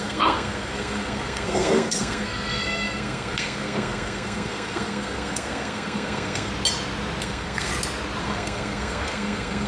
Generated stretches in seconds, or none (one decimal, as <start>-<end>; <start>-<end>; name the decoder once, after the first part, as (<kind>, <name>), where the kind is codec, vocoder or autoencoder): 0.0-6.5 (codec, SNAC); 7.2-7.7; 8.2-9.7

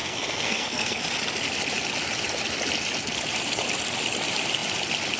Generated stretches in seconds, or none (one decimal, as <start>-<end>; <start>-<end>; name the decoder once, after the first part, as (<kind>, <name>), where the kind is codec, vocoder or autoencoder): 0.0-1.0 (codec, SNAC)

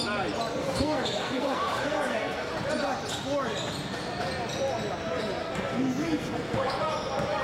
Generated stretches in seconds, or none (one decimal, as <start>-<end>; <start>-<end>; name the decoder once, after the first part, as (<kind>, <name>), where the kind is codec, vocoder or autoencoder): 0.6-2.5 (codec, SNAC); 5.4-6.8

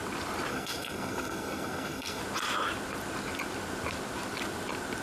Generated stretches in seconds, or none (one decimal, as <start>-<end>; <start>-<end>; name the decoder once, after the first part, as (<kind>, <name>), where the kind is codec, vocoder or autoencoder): 0.5-2.2 (codec, SNAC)

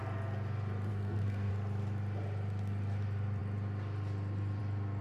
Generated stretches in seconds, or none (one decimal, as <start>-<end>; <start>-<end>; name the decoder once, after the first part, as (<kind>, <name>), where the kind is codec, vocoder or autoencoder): 0.9-1.5 (codec, SNAC)